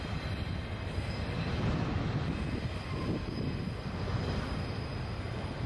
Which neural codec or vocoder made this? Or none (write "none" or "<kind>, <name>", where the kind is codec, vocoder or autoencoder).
none